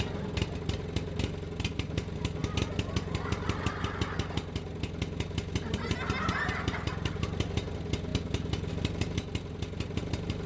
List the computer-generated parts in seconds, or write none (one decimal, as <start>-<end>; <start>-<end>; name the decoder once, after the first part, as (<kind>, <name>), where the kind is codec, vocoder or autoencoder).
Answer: none